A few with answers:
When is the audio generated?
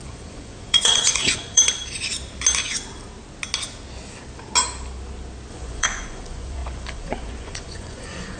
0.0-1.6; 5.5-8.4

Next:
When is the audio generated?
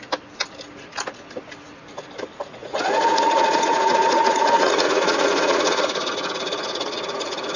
2.6-7.6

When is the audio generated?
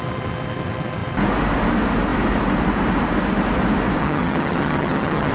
4.0-5.3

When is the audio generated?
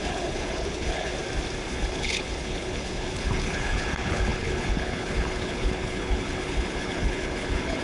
0.0-1.1; 1.7-7.8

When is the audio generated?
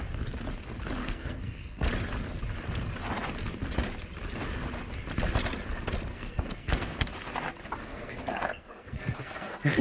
1.0-1.9; 6.1-7.1; 7.8-9.8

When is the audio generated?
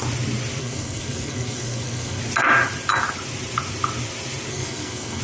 0.6-2.2; 4.5-5.2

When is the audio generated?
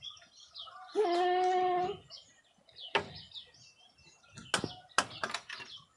none